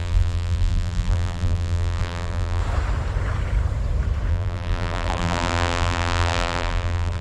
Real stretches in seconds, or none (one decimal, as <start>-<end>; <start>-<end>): 2.6-4.3

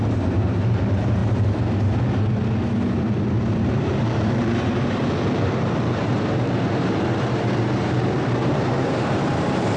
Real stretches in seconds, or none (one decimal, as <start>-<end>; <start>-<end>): 1.2-3.4

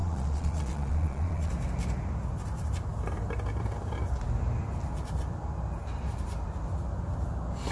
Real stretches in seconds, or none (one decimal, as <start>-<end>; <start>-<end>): 1.5-7.7

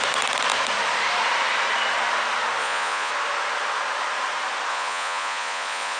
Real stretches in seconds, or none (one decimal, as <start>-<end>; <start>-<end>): 0.0-2.6; 3.1-4.7